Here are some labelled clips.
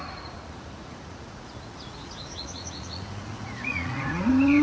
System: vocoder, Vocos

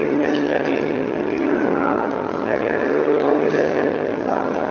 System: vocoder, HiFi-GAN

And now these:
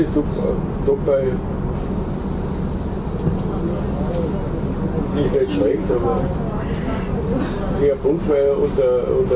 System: none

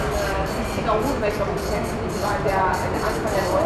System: none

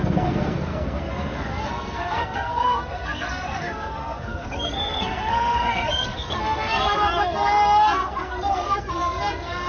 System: codec, SNAC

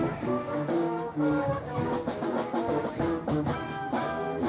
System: codec, DAC